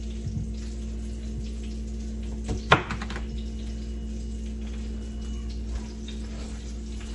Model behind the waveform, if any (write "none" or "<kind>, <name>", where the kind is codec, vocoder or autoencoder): none